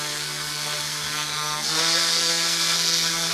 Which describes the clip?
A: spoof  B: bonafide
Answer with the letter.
A